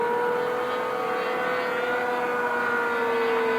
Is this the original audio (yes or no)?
yes